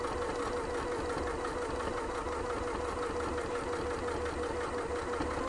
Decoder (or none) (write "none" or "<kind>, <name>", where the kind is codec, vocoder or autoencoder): none